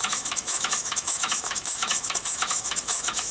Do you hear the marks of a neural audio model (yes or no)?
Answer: yes